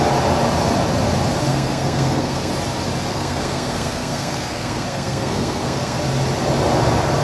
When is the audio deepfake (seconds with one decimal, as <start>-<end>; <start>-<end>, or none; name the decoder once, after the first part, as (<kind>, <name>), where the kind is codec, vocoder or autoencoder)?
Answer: 1.5-2.5 (codec, SNAC); 3.1-6.0